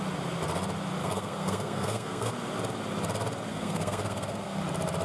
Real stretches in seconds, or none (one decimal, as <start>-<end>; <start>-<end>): 0.0-1.0; 2.3-3.5; 4.6-5.0